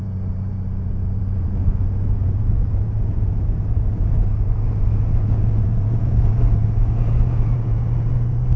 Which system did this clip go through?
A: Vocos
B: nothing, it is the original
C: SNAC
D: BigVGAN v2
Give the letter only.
A